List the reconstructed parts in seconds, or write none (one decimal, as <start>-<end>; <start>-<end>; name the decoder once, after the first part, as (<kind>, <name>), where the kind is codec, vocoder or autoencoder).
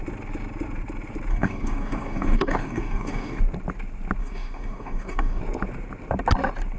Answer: 1.3-3.4 (codec, DAC); 4.2-5.4